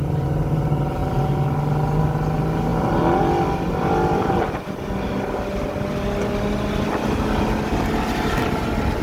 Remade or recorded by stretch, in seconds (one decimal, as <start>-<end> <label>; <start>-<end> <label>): 0.0-9.0 recorded